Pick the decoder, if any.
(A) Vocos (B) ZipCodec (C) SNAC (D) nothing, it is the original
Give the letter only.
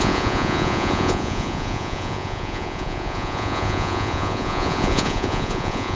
A